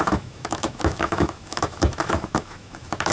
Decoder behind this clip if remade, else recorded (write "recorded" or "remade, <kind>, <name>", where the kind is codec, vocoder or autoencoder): remade, autoencoder, DAC-VAE